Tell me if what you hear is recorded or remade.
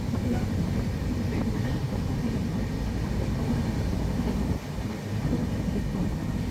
recorded